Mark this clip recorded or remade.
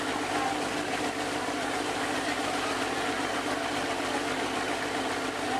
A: recorded